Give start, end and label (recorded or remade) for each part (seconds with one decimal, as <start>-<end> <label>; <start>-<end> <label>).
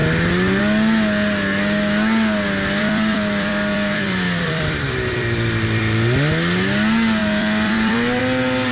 0.0-2.8 recorded; 2.8-6.3 remade; 6.3-7.2 recorded; 7.2-8.2 remade; 8.2-8.7 recorded